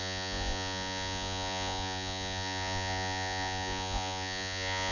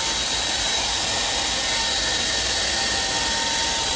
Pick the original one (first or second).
second